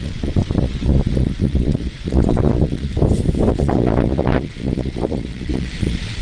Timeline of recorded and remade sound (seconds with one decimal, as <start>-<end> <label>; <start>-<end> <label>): 0.0-2.9 remade; 2.9-3.5 recorded; 3.5-6.2 remade